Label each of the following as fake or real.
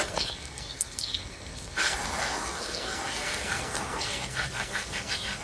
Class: fake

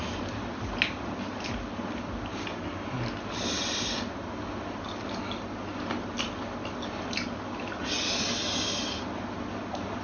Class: real